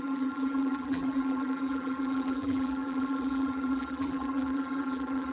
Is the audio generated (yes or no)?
yes